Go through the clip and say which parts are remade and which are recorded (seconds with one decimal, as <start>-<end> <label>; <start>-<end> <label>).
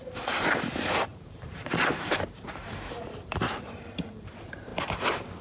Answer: 0.0-1.1 recorded; 1.1-4.3 remade; 4.3-5.4 recorded